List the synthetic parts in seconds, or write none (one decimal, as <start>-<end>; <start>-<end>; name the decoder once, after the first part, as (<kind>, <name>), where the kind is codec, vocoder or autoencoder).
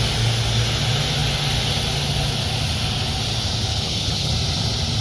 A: 3.7-4.3 (codec, HILCodec)